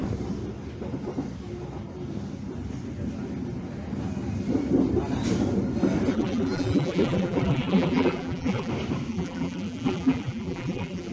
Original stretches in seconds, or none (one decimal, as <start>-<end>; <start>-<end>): 0.0-6.1; 8.7-9.1